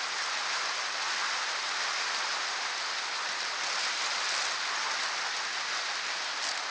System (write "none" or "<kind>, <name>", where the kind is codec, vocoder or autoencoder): none